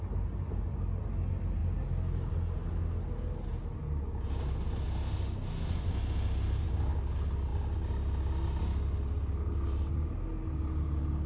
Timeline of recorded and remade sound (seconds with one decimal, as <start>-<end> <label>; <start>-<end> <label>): 0.0-11.3 recorded